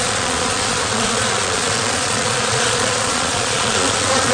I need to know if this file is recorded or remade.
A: remade